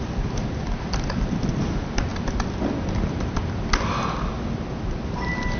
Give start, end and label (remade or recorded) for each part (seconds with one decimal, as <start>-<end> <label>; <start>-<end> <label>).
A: 0.0-5.6 recorded